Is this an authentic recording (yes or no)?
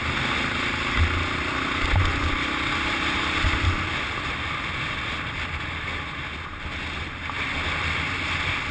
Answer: yes